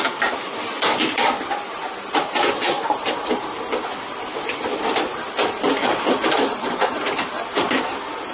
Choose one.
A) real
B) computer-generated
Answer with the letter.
A